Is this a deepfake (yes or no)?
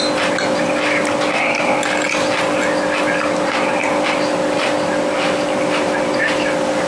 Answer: no